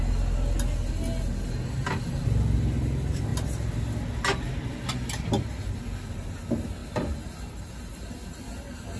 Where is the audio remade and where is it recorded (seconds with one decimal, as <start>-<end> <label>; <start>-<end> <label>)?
0.0-9.0 recorded